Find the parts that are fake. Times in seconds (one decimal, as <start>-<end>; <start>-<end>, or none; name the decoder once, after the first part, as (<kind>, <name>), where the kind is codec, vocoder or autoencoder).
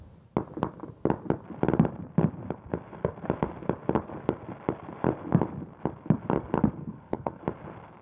6.8-7.4 (codec, SNAC)